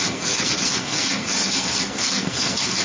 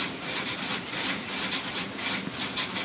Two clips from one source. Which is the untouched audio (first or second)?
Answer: second